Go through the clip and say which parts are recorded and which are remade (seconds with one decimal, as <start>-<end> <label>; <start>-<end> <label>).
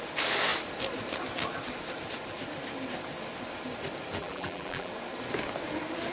0.0-4.2 recorded; 4.2-4.9 remade; 4.9-6.1 recorded